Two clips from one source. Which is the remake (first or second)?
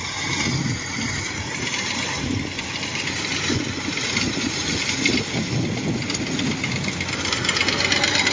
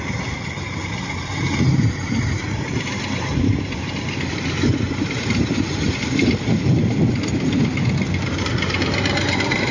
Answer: second